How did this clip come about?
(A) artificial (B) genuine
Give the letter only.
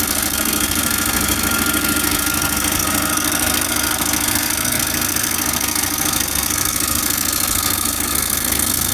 A